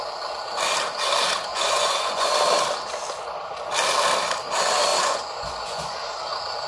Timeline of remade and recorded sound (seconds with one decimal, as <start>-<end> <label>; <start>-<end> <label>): 0.0-1.5 recorded; 1.5-2.3 remade; 2.3-4.9 recorded; 4.9-6.1 remade; 6.1-6.7 recorded

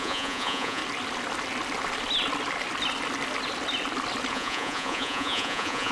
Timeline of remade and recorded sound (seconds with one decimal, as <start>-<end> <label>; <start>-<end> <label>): 0.0-0.8 remade; 0.8-4.3 recorded; 4.3-5.9 remade

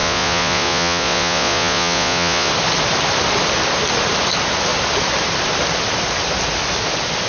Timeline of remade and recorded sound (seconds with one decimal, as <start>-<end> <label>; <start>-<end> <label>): 0.0-2.5 remade; 2.5-7.3 recorded

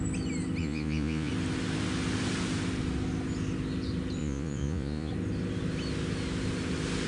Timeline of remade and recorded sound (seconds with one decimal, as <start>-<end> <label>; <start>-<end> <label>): 0.0-0.6 recorded; 0.6-1.3 remade; 1.3-4.2 recorded; 4.2-5.1 remade; 5.1-7.1 recorded

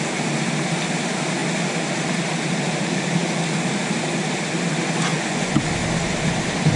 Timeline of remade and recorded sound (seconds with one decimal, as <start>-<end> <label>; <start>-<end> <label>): 0.0-5.1 recorded; 5.1-5.7 remade; 5.7-6.8 recorded

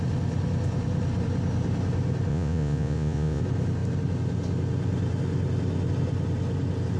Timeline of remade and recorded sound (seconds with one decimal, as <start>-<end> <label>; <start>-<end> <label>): 0.0-2.3 recorded; 2.3-3.4 remade; 3.4-7.0 recorded

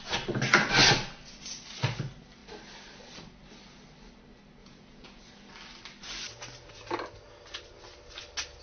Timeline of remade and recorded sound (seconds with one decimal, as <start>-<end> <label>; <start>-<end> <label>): 0.0-4.6 recorded; 4.6-5.2 remade; 5.2-8.6 recorded